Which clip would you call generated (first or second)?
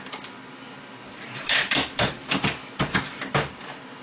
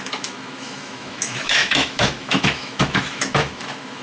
second